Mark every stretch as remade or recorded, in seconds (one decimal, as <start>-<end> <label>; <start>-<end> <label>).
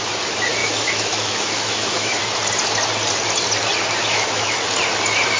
0.0-0.6 recorded; 0.6-2.2 remade; 2.2-4.0 recorded; 4.0-4.6 remade; 4.6-5.4 recorded